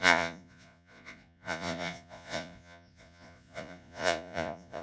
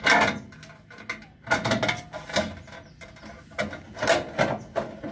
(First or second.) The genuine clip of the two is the second